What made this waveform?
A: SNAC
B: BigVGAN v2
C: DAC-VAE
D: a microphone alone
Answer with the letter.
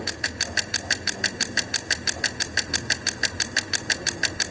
D